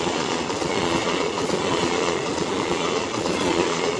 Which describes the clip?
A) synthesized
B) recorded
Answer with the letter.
A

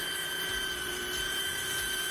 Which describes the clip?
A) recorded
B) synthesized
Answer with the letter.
B